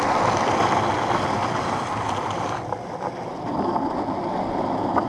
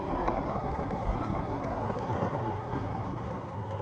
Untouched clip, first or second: first